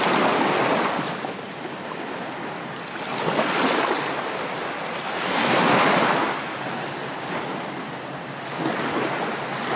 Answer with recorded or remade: recorded